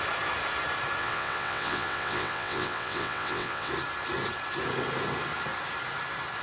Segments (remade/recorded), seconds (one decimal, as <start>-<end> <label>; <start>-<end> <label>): 0.0-1.0 recorded; 1.0-3.7 remade; 3.7-6.4 recorded